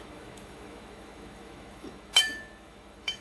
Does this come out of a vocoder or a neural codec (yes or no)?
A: yes